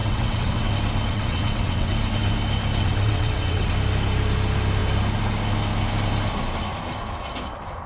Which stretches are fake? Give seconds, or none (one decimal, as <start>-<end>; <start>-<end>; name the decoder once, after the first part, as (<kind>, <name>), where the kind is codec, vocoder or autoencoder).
0.0-0.7 (vocoder, WaveNeXt); 1.1-1.9; 2.8-3.7